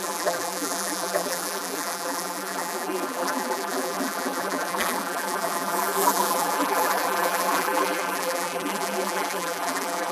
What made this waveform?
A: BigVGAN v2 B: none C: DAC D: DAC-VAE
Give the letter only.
A